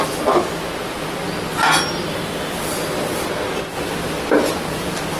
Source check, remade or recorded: recorded